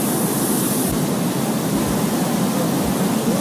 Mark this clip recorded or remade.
recorded